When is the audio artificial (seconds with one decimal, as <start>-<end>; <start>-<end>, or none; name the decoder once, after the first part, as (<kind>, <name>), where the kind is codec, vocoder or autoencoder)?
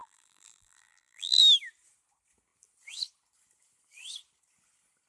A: 0.0-1.4 (vocoder, BigVGAN v2)